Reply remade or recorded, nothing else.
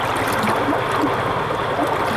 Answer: recorded